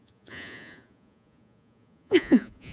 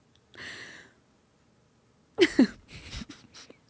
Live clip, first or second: second